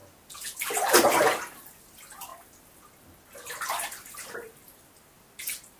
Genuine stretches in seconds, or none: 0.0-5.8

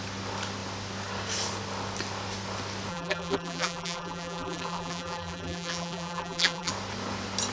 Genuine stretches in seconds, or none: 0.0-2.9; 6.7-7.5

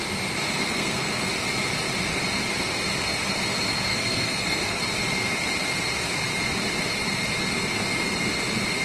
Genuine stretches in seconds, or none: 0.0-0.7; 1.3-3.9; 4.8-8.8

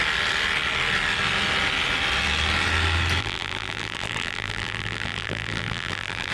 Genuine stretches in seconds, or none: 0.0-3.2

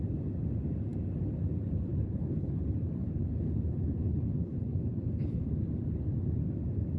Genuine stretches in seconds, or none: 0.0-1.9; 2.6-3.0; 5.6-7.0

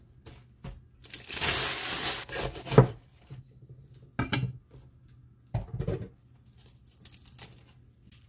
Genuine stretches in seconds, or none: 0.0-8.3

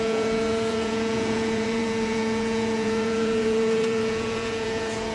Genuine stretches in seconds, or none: none